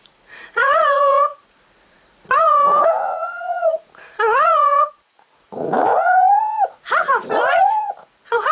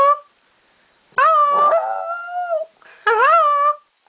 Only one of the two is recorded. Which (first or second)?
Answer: second